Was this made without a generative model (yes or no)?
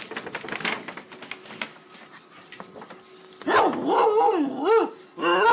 yes